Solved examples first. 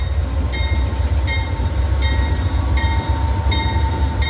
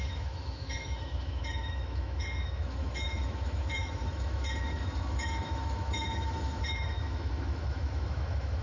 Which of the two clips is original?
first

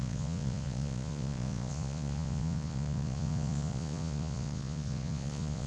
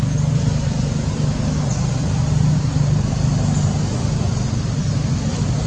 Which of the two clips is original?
second